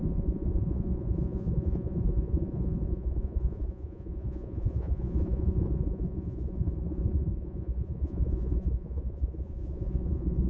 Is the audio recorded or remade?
remade